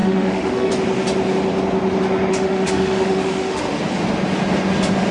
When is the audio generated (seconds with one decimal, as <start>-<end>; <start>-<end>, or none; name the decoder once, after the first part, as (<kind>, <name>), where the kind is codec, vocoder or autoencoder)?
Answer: 0.0-0.7 (autoencoder, DAC-VAE); 2.3-3.6